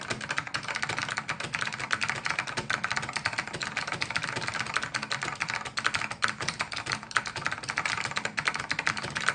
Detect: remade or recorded recorded